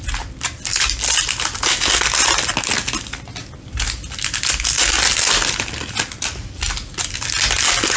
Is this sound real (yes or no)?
yes